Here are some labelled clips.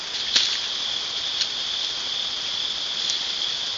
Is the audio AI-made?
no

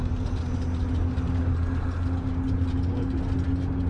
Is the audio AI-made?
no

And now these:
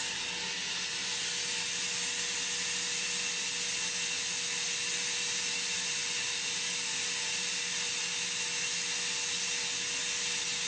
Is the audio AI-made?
no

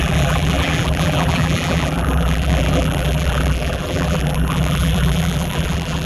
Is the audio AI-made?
yes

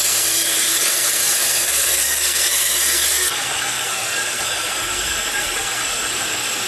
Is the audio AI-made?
yes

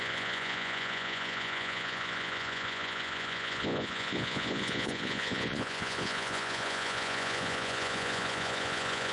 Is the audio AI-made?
yes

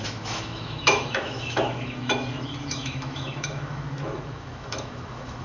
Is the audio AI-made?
yes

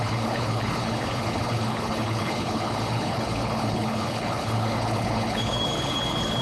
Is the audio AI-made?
yes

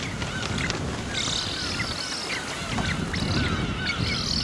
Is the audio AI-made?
no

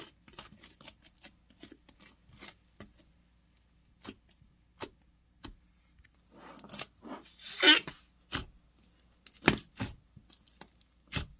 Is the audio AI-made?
no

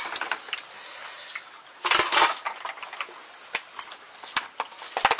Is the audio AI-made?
no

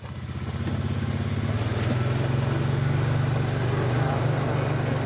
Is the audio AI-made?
no